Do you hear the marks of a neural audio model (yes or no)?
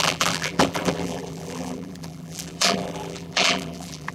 yes